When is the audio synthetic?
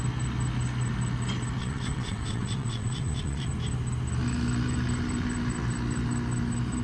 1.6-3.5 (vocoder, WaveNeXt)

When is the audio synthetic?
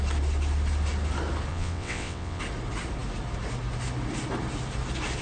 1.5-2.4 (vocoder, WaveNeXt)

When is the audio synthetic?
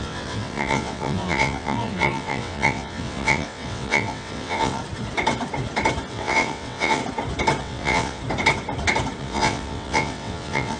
0.0-4.8 (vocoder, WaveNeXt); 6.1-7.0; 7.6-8.2; 9.2-10.8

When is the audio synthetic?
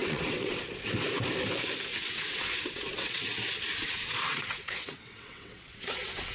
0.0-0.6 (vocoder, WaveNeXt); 1.9-3.2; 3.8-6.3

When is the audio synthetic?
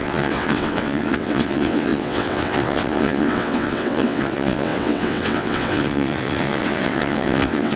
0.0-7.8 (vocoder, WaveNeXt)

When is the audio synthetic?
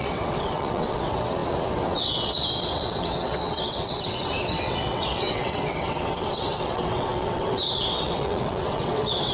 0.0-9.3 (vocoder, WaveNeXt)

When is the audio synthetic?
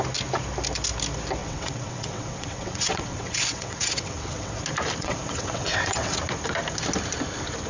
1.4-4.6 (vocoder, WaveNeXt); 5.0-6.2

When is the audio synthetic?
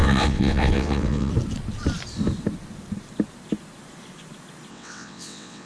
0.0-1.3 (vocoder, WaveNeXt); 4.7-5.7